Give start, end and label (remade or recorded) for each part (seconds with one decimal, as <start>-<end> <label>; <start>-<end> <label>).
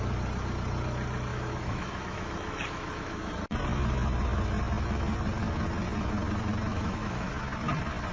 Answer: 0.0-1.3 recorded; 1.3-3.3 remade; 3.3-6.7 recorded; 6.7-7.3 remade; 7.3-8.1 recorded